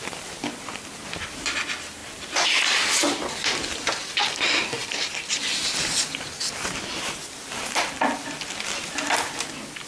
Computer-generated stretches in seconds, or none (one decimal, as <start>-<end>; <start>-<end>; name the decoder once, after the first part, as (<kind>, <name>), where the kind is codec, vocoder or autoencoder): none